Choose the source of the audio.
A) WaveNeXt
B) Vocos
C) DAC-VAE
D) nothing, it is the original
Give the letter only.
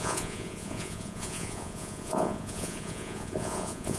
B